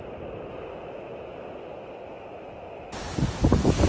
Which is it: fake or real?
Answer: real